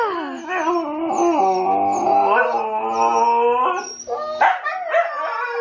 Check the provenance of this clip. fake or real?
real